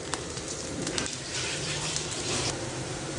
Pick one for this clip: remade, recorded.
remade